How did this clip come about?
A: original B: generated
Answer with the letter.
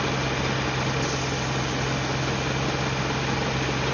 A